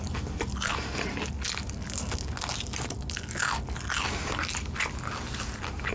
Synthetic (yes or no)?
no